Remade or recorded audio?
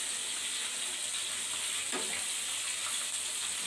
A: recorded